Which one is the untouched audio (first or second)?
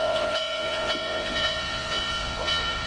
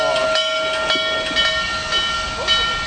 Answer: second